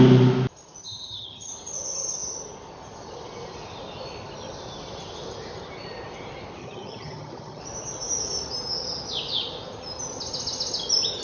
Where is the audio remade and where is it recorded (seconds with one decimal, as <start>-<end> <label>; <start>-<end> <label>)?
0.0-0.8 recorded; 0.8-1.5 remade; 1.5-6.6 recorded; 6.6-7.6 remade; 7.6-11.2 recorded

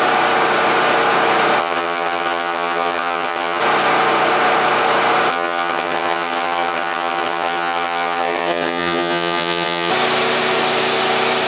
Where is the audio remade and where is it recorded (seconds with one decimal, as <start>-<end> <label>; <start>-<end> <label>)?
0.0-1.6 recorded; 1.6-3.6 remade; 3.6-5.3 recorded; 5.3-9.9 remade; 9.9-11.5 recorded

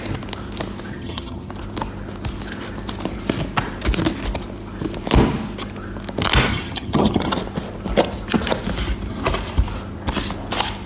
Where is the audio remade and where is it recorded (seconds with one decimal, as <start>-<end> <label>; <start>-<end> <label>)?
0.0-0.9 recorded; 0.9-1.5 remade; 1.5-6.5 recorded; 6.5-7.3 remade; 7.3-10.9 recorded

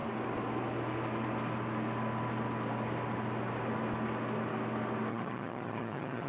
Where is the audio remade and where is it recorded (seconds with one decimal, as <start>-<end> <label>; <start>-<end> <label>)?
0.0-5.1 recorded; 5.1-6.3 remade

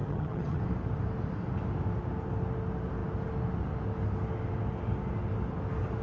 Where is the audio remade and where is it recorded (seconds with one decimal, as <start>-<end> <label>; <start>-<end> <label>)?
0.0-0.6 remade; 0.6-6.0 recorded

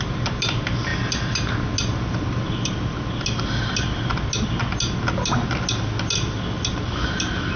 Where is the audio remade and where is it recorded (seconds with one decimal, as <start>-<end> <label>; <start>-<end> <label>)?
0.0-7.6 recorded